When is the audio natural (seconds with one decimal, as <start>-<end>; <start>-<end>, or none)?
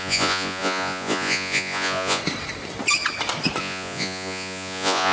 2.2-3.6